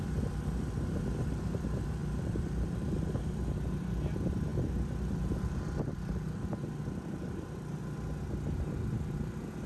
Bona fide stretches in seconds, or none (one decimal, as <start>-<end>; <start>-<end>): 0.0-2.0; 3.2-4.5; 7.8-9.7